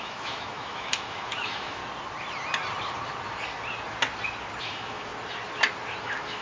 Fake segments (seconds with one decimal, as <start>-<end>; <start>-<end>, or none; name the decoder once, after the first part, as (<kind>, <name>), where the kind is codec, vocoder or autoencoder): 0.0-1.8 (autoencoder, DAC-VAE); 4.6-5.1; 6.0-6.4

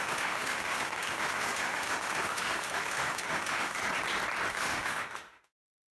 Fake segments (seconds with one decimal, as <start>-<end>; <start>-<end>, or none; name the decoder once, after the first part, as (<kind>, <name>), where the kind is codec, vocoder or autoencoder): 0.0-3.8 (autoencoder, DAC-VAE); 4.5-5.9

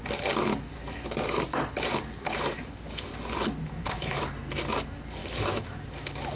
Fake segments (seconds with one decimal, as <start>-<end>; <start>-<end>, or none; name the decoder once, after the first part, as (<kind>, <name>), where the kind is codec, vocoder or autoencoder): 3.6-4.2 (autoencoder, DAC-VAE); 5.2-5.8

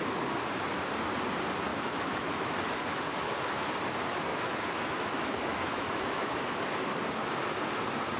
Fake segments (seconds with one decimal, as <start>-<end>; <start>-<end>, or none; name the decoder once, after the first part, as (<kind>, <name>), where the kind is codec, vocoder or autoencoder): 1.7-3.0 (autoencoder, DAC-VAE); 4.3-6.5

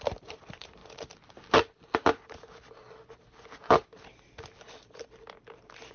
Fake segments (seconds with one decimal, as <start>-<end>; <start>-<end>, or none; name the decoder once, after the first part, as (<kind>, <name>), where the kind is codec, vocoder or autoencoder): none

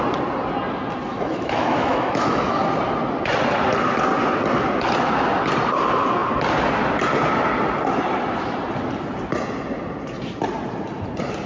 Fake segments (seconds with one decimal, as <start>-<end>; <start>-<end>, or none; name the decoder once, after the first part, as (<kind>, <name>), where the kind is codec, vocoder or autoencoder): 1.1-2.6 (autoencoder, DAC-VAE)

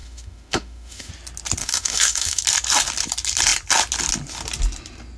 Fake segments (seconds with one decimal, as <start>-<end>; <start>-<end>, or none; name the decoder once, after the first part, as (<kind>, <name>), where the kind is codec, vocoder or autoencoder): 0.0-1.1 (autoencoder, DAC-VAE); 1.6-2.4

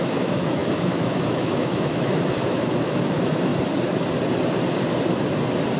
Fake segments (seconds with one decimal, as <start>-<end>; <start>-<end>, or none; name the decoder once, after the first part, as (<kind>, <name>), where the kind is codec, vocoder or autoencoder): 0.0-3.5 (autoencoder, DAC-VAE)